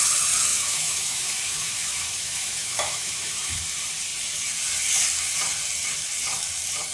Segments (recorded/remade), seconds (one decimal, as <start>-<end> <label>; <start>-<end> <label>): 0.0-0.5 recorded; 0.5-3.6 remade; 3.6-6.9 recorded